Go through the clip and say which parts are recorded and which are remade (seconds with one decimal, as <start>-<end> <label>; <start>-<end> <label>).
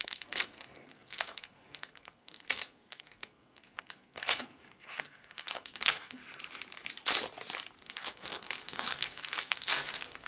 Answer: 0.0-6.2 remade; 6.2-7.8 recorded; 7.8-10.3 remade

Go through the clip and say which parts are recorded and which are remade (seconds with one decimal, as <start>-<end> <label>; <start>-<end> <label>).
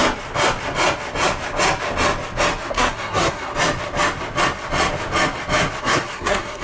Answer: 0.0-2.7 recorded; 2.7-3.5 remade; 3.5-5.8 recorded; 5.8-6.6 remade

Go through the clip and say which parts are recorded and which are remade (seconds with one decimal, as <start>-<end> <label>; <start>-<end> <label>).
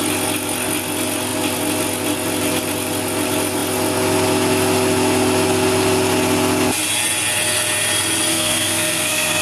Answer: 0.0-8.3 recorded; 8.3-9.4 remade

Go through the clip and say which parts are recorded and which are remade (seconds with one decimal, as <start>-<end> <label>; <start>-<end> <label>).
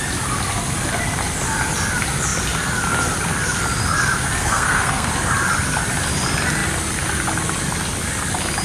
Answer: 0.0-4.4 recorded; 4.4-5.1 remade; 5.1-8.6 recorded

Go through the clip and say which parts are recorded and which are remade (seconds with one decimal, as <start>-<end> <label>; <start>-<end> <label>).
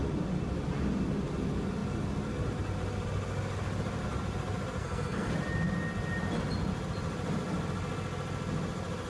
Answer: 0.0-4.8 recorded; 4.8-5.3 remade; 5.3-9.1 recorded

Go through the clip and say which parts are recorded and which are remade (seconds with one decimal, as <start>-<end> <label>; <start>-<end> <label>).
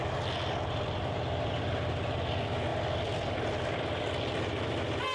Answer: 0.0-5.1 recorded